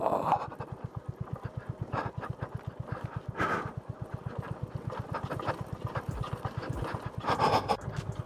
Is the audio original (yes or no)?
yes